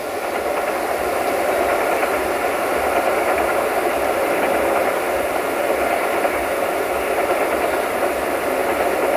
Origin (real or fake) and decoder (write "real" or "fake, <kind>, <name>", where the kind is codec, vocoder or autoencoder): real